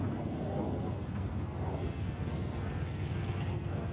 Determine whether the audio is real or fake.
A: fake